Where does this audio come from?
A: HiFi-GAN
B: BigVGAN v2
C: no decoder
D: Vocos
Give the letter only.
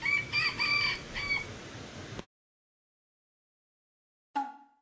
C